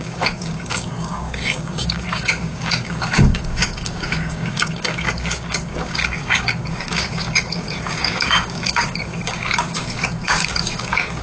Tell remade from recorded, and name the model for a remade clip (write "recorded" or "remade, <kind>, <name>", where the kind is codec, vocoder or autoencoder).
remade, codec, DAC